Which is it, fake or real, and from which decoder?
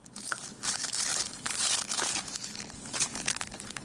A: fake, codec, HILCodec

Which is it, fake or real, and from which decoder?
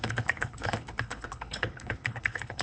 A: fake, codec, HILCodec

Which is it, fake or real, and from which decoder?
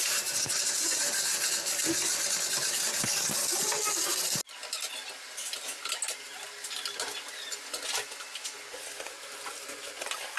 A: real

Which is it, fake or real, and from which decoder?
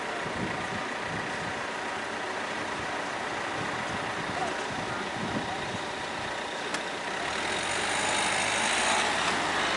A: real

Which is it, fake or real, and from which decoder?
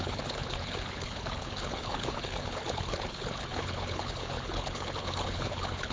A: fake, codec, HILCodec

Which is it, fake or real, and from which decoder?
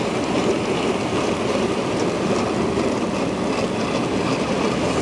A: real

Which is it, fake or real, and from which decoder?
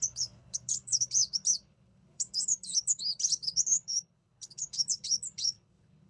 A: fake, codec, HILCodec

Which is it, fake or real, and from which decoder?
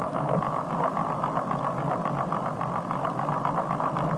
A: real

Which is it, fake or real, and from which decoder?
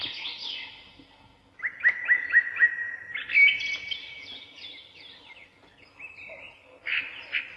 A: real